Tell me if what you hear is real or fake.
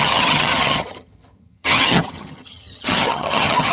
fake